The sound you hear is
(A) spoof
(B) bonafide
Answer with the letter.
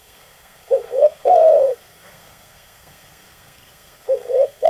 A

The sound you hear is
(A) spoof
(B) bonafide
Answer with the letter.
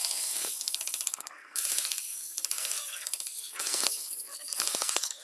A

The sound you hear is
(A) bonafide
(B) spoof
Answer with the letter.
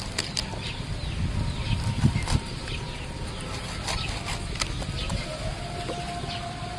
A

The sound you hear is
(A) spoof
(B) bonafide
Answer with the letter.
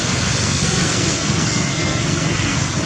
A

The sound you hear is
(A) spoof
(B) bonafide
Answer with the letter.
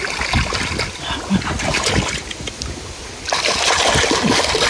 B